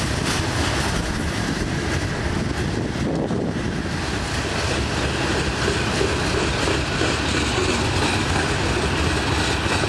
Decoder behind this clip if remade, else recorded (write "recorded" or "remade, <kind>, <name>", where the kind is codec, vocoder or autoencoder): recorded